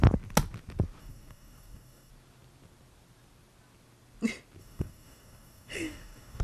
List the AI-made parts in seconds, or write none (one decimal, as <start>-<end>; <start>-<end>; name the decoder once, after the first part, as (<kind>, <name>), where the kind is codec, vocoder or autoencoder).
1.0-2.1 (codec, DAC); 4.6-6.4